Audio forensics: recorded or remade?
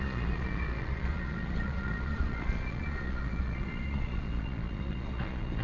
remade